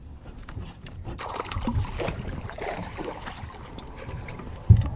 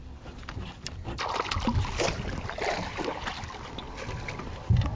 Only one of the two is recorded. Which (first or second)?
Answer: second